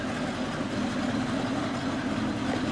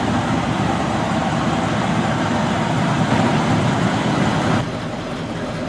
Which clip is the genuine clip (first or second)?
first